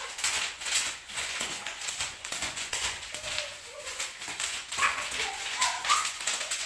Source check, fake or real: fake